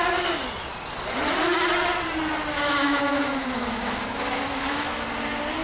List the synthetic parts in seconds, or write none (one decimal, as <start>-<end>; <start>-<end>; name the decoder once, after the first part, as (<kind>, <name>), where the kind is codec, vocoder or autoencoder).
2.5-5.0 (autoencoder, DAC-VAE)